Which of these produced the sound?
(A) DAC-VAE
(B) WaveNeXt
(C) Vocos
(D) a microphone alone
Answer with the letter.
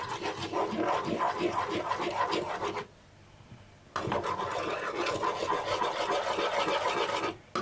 D